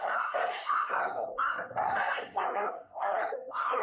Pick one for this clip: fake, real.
fake